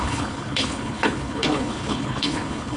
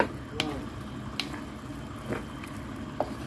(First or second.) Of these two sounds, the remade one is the first